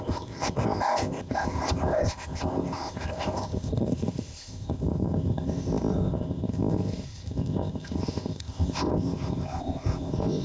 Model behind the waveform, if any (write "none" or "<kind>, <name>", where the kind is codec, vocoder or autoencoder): codec, ZipCodec